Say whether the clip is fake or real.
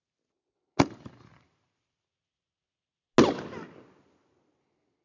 real